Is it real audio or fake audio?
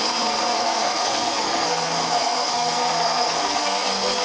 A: fake